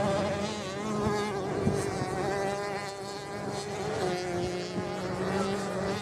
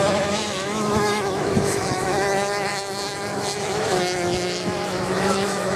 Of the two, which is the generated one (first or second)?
second